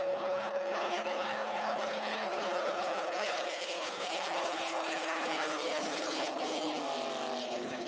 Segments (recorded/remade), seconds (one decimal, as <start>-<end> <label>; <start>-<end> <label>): 0.0-6.8 remade; 6.8-7.4 recorded; 7.4-7.9 remade